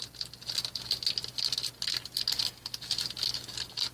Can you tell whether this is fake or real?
real